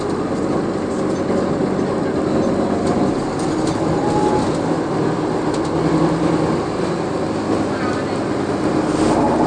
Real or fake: real